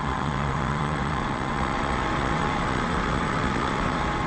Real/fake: fake